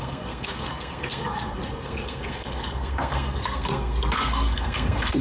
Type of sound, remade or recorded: remade